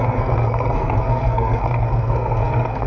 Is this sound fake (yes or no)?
yes